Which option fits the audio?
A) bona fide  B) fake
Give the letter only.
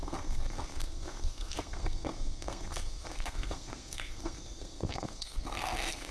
B